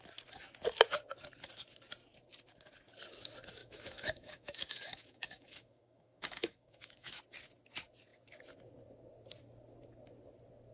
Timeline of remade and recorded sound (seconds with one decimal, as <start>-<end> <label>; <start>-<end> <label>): 0.0-3.6 recorded; 3.6-7.2 remade; 7.2-10.7 recorded